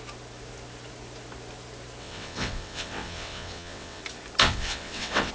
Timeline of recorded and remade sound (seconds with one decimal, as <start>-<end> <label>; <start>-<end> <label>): 0.0-2.0 recorded; 2.0-4.0 remade; 4.0-4.4 recorded; 4.4-5.3 remade